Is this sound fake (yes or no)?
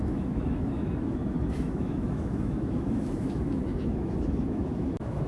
yes